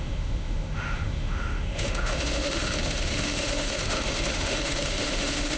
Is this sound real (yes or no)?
no